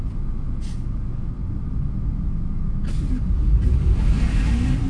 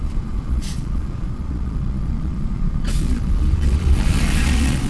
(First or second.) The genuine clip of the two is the first